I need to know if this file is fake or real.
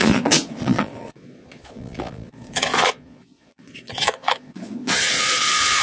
fake